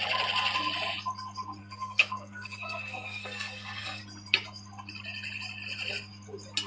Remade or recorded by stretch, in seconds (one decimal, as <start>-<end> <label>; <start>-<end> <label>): 0.0-1.6 recorded; 1.6-4.0 remade; 4.0-6.7 recorded